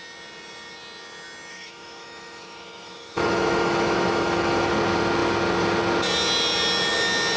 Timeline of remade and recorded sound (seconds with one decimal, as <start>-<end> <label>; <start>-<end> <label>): 0.0-1.5 recorded; 1.5-4.7 remade; 4.7-7.4 recorded